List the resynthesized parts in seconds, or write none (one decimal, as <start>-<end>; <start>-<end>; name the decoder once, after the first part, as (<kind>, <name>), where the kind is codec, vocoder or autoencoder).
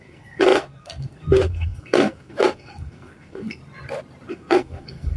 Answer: 0.0-3.6 (codec, SNAC); 4.3-5.2